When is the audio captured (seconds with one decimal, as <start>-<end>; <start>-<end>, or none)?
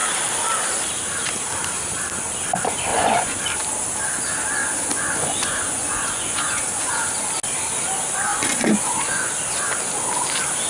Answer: 0.0-2.9; 3.4-4.6; 7.1-8.3; 9.3-10.7